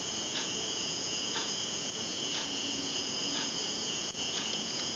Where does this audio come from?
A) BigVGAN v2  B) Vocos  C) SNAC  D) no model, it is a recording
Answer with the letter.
B